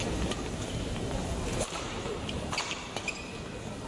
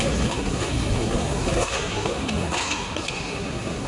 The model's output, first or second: second